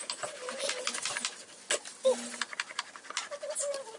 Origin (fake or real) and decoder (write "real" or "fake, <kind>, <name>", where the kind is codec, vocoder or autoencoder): real